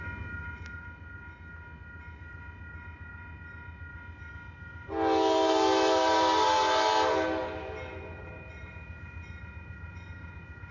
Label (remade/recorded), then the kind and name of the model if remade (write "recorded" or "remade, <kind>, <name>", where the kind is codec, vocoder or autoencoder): recorded